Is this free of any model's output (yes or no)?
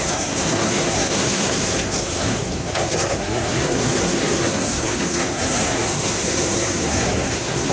no